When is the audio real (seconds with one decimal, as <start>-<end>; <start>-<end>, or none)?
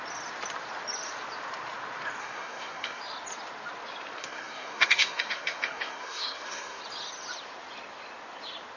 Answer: 0.0-2.2; 3.0-4.2; 6.8-8.8